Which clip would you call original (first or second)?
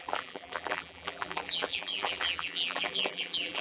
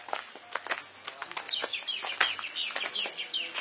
second